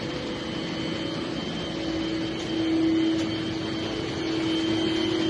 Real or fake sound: real